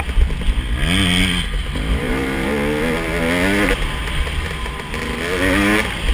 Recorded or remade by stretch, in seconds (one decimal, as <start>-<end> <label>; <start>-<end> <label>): 0.0-1.6 recorded; 1.6-2.5 remade; 2.5-4.0 recorded; 4.0-4.5 remade; 4.5-6.1 recorded